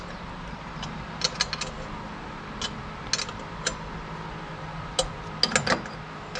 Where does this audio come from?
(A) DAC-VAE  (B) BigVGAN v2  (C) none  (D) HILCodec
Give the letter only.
C